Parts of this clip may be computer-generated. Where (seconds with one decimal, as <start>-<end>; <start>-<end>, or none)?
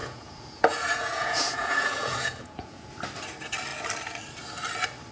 0.0-2.9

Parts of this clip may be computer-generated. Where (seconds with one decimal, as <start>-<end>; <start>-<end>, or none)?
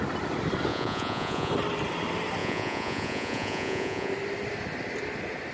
0.7-1.5; 2.4-4.1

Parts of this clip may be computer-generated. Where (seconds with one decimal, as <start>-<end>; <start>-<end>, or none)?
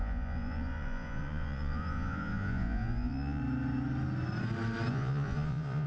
0.0-3.4; 4.9-5.9